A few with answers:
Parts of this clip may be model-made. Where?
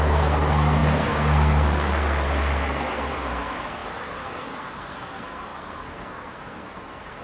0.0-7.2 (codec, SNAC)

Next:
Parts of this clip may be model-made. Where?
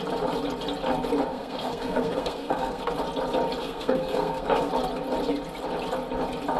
1.3-2.8 (codec, SNAC); 3.6-4.7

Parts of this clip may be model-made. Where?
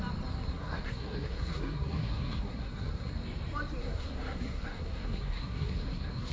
0.5-3.1 (codec, SNAC); 3.8-6.3